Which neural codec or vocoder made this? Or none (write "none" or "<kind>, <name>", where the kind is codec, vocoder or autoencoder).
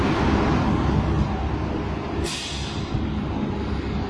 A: none